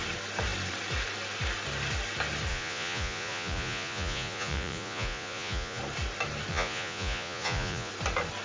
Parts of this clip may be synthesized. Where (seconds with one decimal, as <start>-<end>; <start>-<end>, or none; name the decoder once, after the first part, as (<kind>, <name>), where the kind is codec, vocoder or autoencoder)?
2.5-5.8 (vocoder, Vocos); 6.5-7.9